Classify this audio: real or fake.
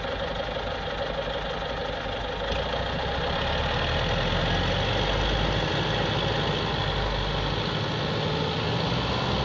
real